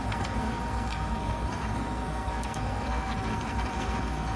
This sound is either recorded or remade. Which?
remade